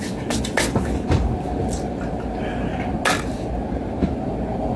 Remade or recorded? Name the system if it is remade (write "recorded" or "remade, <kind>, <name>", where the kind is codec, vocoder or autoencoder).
recorded